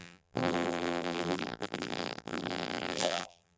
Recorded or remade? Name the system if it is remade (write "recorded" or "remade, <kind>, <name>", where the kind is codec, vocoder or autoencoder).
remade, vocoder, BigVGAN v2